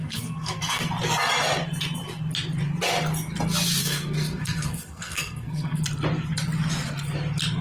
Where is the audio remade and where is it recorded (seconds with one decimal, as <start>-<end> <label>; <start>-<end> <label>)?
0.0-0.9 remade; 0.9-3.8 recorded; 3.8-5.8 remade; 5.8-7.6 recorded